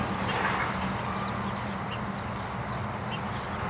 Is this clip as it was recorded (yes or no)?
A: yes